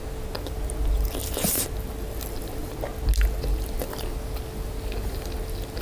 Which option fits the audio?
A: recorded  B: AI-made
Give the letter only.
A